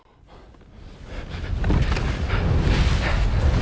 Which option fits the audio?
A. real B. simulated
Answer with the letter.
A